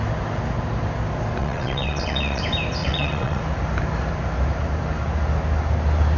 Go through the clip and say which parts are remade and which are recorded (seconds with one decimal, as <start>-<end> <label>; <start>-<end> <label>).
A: 0.0-1.4 recorded; 1.4-2.4 remade; 2.4-2.8 recorded; 2.8-3.4 remade; 3.4-6.2 recorded